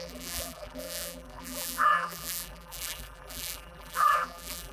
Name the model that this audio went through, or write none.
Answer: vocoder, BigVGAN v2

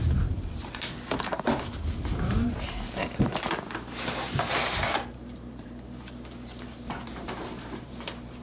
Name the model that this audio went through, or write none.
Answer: vocoder, BigVGAN v2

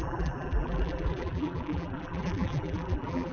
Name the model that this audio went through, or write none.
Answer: vocoder, BigVGAN v2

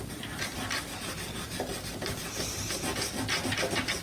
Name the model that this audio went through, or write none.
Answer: none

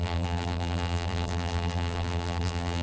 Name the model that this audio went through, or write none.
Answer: vocoder, BigVGAN v2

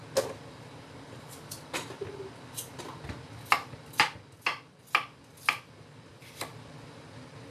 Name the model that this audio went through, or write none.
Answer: none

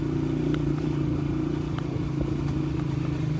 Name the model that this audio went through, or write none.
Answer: none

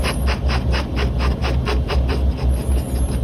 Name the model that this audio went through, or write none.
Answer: none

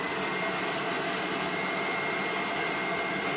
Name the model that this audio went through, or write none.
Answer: none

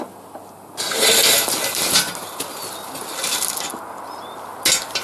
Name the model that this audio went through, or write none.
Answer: none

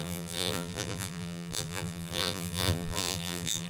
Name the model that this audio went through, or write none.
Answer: vocoder, BigVGAN v2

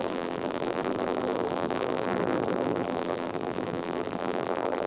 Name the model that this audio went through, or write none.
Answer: vocoder, BigVGAN v2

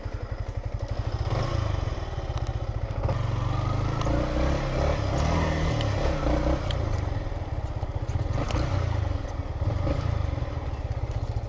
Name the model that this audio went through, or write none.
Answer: none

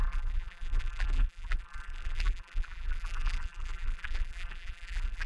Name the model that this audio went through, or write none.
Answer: vocoder, BigVGAN v2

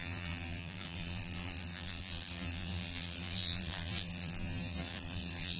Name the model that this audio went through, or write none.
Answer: vocoder, BigVGAN v2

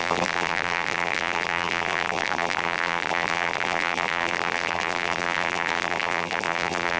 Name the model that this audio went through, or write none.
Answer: vocoder, BigVGAN v2